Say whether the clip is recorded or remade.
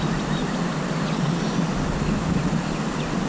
recorded